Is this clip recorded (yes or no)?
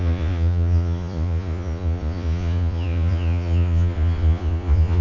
no